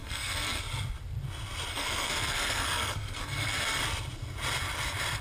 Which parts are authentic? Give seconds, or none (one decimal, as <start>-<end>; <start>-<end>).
0.6-1.7; 3.8-5.2